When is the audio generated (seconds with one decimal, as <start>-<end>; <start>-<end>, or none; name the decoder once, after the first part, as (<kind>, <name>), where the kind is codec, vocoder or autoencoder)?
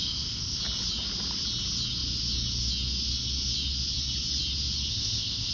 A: 0.0-0.6 (codec, ZipCodec); 4.9-5.5